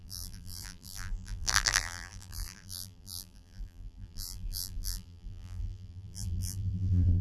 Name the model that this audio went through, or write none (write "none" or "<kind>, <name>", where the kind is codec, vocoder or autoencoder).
vocoder, BigVGAN v2